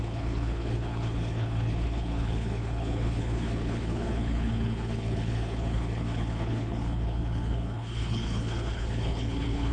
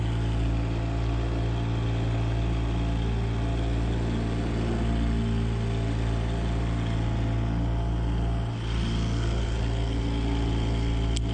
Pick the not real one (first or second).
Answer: first